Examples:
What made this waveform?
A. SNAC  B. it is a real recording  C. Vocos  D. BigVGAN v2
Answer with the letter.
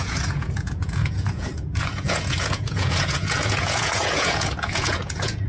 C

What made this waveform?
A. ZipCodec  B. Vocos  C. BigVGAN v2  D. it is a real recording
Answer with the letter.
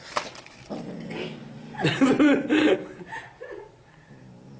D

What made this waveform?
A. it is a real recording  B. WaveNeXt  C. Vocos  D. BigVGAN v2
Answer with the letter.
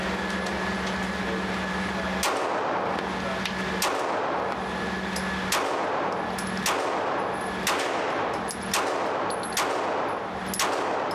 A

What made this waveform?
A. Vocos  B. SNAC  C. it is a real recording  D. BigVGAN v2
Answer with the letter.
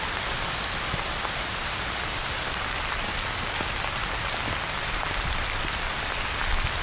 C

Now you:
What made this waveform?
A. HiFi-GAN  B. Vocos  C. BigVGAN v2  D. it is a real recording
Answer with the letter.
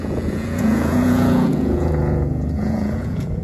B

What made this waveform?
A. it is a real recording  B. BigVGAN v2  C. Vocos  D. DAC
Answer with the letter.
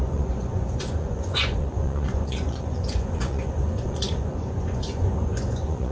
C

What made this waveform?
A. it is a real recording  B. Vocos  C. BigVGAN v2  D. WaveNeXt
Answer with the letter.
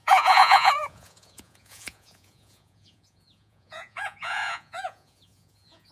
B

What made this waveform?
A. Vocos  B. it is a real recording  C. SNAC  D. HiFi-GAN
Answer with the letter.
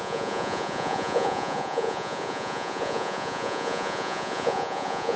A